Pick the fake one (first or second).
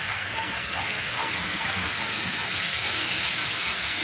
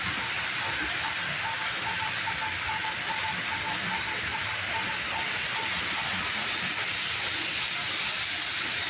first